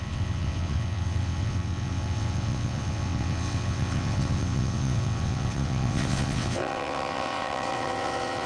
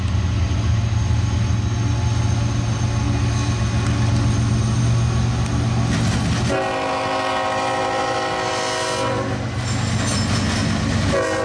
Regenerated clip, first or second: first